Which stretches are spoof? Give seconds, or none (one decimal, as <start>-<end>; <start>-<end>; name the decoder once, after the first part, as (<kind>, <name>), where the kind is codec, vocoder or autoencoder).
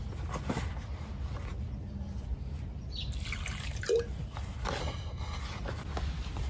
4.8-5.4 (codec, SNAC)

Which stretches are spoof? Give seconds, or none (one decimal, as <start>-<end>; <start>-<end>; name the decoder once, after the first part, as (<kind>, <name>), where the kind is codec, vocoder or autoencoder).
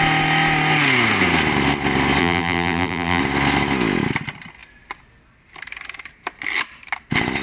2.2-3.2 (vocoder, BigVGAN v2)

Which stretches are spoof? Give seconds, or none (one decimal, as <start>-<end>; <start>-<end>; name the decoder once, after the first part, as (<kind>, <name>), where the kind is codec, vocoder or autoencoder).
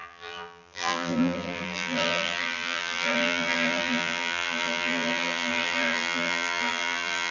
0.0-7.3 (vocoder, BigVGAN v2)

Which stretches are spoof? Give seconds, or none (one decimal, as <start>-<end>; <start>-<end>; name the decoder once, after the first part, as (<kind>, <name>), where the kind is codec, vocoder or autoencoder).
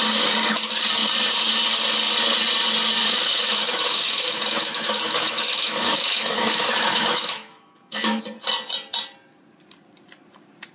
3.0-8.2 (autoencoder, DAC-VAE)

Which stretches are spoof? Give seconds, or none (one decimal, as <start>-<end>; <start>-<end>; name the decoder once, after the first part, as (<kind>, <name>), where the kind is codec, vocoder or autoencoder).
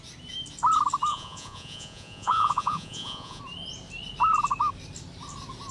1.1-3.4 (vocoder, Vocos)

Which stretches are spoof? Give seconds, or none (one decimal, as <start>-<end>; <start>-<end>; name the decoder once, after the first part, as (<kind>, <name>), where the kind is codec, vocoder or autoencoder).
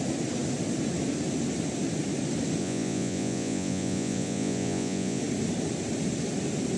2.6-5.2 (vocoder, Vocos)